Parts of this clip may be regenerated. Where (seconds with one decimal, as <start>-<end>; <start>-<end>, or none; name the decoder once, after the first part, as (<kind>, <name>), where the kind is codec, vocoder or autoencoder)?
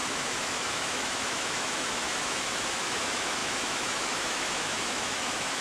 0.0-5.6 (autoencoder, DAC-VAE)